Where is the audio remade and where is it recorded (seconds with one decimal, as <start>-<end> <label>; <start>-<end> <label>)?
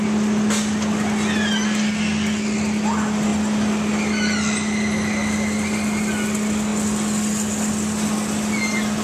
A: 0.0-9.0 recorded